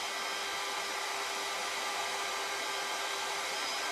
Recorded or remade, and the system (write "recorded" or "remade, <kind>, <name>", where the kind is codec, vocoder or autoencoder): recorded